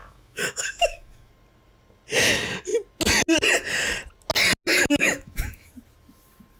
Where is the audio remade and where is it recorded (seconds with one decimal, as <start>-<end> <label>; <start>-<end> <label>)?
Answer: 0.0-1.3 remade; 1.3-4.7 recorded; 4.7-5.7 remade; 5.7-6.6 recorded